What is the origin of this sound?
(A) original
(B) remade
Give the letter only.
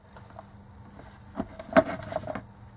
A